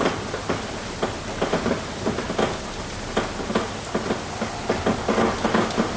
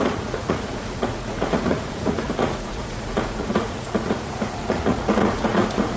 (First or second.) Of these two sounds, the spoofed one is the second